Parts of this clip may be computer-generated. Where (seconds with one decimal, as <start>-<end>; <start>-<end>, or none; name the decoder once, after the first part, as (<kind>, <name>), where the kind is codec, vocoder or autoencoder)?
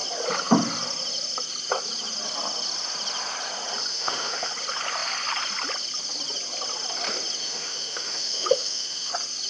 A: 3.9-4.5 (autoencoder, DAC-VAE); 7.4-9.1